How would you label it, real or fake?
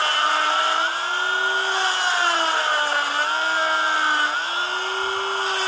real